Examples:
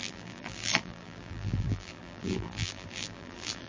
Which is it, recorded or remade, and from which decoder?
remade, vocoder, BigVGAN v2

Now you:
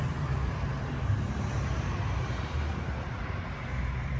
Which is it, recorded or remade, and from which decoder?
remade, vocoder, BigVGAN v2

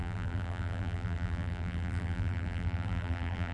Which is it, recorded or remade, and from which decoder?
remade, vocoder, BigVGAN v2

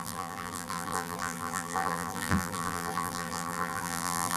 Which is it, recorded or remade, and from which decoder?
remade, vocoder, BigVGAN v2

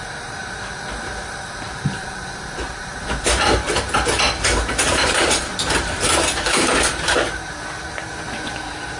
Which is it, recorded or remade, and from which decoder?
remade, vocoder, BigVGAN v2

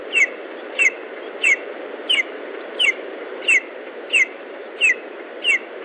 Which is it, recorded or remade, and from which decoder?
remade, vocoder, BigVGAN v2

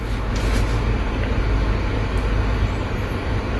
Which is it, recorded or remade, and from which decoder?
recorded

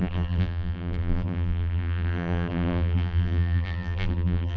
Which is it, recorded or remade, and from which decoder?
remade, vocoder, BigVGAN v2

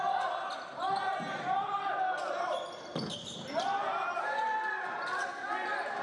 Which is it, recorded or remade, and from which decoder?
recorded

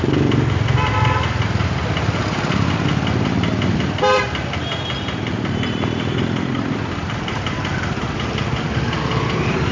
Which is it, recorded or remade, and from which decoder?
remade, vocoder, BigVGAN v2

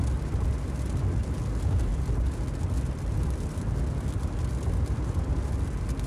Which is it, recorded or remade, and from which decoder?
recorded